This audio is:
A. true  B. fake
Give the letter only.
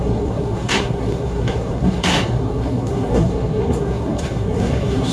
B